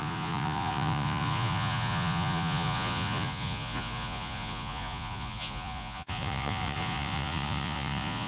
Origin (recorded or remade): remade